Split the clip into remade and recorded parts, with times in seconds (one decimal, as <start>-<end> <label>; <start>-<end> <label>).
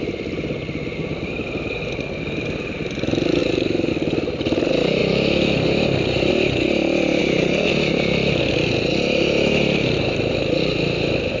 0.0-3.4 recorded; 3.4-3.9 remade; 3.9-7.2 recorded; 7.2-7.7 remade; 7.7-11.4 recorded